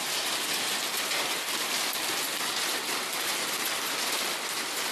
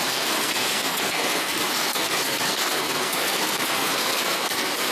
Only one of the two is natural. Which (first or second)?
first